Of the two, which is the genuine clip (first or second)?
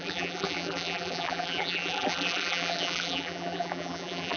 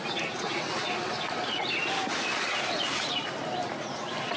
second